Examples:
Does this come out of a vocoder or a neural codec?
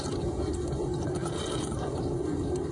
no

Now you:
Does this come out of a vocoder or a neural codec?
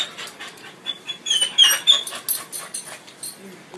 no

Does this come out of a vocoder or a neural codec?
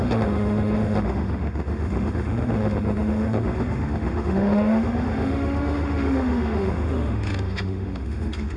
yes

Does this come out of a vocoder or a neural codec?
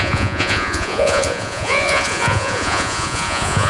yes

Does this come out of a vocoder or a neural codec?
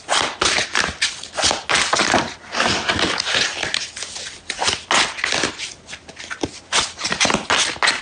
no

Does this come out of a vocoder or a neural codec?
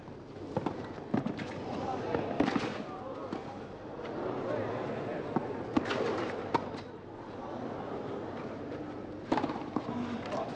no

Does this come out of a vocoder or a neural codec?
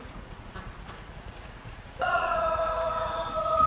yes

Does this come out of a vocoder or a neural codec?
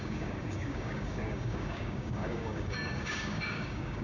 yes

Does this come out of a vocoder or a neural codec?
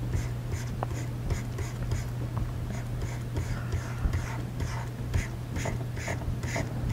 no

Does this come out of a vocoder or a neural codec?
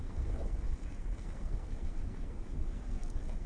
yes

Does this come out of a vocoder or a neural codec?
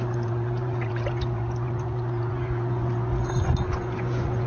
yes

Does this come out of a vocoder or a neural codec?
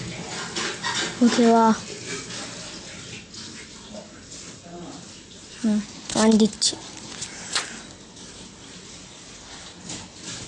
no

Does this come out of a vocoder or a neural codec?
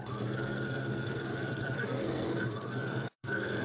yes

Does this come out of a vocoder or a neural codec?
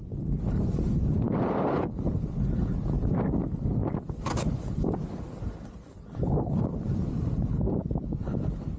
no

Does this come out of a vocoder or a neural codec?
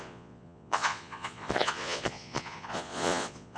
yes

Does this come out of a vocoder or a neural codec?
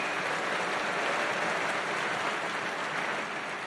no